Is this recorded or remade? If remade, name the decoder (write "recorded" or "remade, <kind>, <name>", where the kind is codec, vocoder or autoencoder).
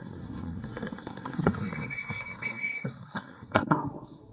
remade, codec, SNAC